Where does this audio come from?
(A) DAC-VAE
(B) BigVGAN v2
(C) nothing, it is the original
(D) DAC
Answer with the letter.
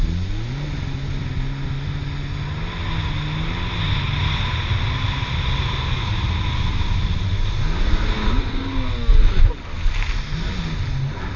C